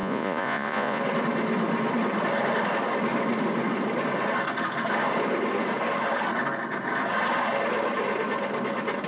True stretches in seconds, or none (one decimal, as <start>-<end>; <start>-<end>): 1.0-9.1